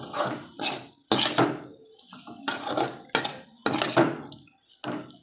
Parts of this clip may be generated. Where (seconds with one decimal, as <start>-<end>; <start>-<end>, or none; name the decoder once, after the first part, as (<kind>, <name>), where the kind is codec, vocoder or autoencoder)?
none